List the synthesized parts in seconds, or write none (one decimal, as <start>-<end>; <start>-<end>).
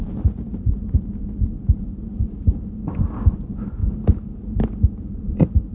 0.0-2.1; 2.9-3.8; 5.1-5.7